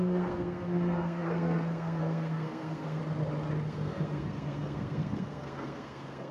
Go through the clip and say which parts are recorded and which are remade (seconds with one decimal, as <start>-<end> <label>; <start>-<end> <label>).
0.0-3.0 remade; 3.0-3.7 recorded; 3.7-6.3 remade